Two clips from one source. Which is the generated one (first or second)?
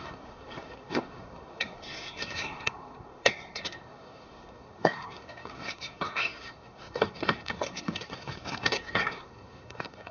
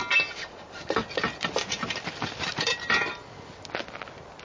first